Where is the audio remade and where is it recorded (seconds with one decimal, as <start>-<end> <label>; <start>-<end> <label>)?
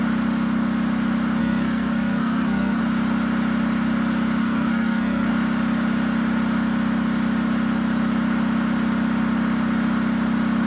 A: 0.0-1.4 recorded; 1.4-2.8 remade; 2.8-4.4 recorded; 4.4-5.3 remade; 5.3-10.7 recorded